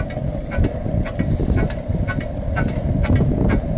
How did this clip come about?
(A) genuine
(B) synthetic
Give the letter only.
A